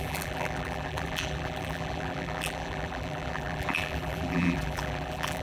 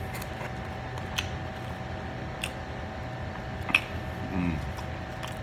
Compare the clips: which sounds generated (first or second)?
first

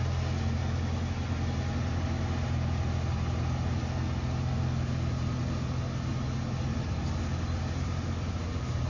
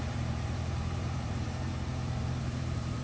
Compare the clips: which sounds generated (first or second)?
second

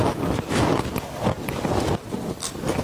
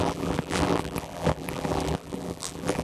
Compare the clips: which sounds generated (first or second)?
second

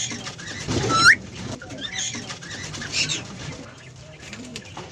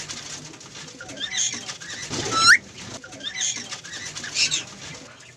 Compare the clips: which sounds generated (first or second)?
first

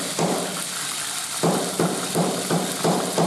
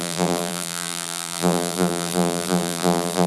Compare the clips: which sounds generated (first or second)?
second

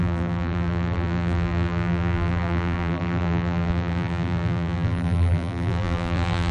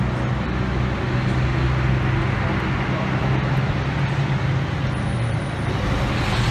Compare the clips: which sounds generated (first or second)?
first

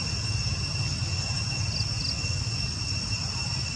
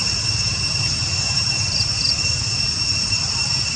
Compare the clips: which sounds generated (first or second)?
second